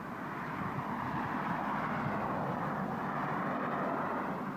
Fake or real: real